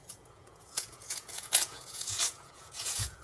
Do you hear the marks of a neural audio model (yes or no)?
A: yes